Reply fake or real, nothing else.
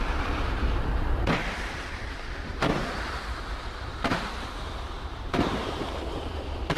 fake